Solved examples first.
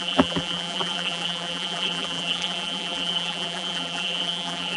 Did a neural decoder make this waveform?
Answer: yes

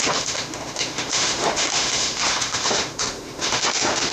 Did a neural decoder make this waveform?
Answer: yes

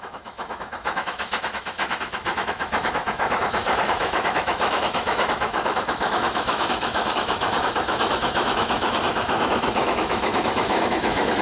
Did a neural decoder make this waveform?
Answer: yes